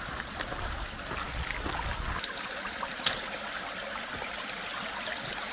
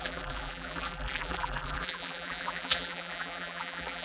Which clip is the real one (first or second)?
first